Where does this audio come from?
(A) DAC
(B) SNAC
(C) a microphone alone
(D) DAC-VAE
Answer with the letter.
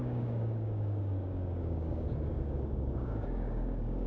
A